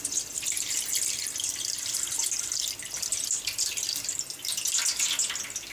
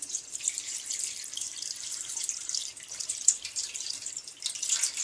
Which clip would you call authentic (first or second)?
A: first